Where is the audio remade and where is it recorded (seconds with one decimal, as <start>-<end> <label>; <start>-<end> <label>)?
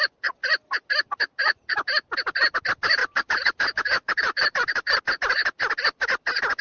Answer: 0.0-3.0 recorded; 3.0-5.0 remade; 5.0-6.6 recorded